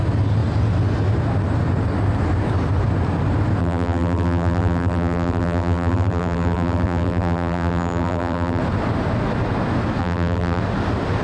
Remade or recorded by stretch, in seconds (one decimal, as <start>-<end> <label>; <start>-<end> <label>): 0.0-3.6 recorded; 3.6-8.6 remade; 8.6-10.0 recorded; 10.0-10.6 remade; 10.6-11.2 recorded